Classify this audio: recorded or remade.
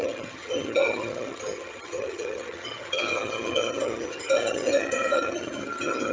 remade